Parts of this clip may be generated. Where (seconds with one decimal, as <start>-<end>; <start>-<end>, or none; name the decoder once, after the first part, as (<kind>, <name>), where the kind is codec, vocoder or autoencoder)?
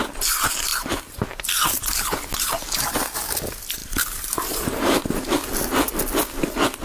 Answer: 0.7-1.2 (vocoder, BigVGAN v2); 3.8-5.0